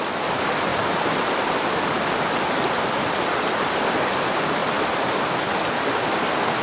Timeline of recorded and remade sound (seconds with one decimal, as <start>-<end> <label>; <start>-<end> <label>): 0.0-6.6 recorded